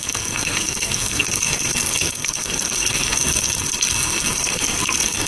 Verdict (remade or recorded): remade